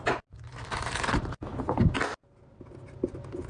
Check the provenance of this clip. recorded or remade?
recorded